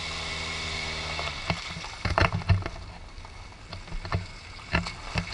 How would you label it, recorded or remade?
recorded